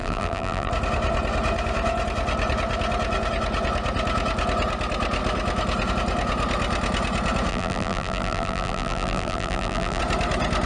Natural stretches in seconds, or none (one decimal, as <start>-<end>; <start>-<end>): 0.7-7.5; 10.0-10.7